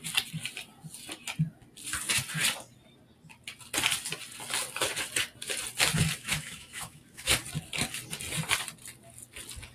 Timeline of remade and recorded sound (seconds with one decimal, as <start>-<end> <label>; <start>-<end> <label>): 0.0-6.2 recorded; 6.2-7.4 remade; 7.4-9.7 recorded